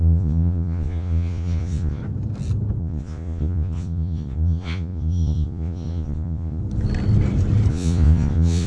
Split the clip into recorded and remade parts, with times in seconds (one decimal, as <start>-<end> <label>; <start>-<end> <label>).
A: 0.0-2.0 remade; 2.0-2.8 recorded; 2.8-6.6 remade; 6.6-7.7 recorded; 7.7-8.7 remade